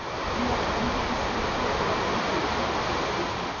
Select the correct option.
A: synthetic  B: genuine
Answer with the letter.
B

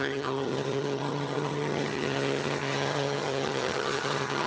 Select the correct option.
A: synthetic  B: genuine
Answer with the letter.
A